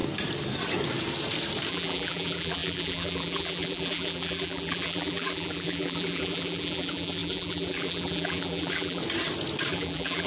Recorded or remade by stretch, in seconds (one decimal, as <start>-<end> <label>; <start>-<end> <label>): 0.0-1.7 recorded; 1.7-9.0 remade; 9.0-9.7 recorded; 9.7-10.3 remade